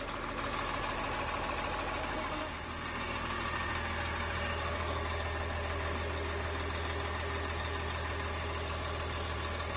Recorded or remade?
recorded